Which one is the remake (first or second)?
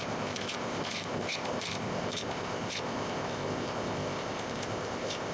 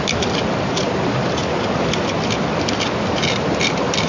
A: first